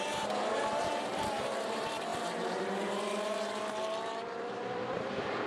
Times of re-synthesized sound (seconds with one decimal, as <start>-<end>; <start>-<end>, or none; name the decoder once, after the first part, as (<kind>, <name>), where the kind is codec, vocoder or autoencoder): 0.0-5.5 (vocoder, BigVGAN v2)